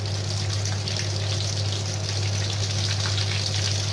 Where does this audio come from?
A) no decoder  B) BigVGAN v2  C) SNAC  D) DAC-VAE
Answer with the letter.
A